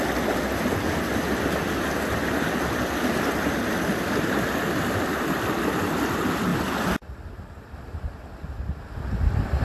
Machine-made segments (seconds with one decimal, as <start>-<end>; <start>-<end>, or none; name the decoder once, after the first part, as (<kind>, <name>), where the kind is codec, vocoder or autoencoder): 6.5-9.0 (vocoder, BigVGAN v2)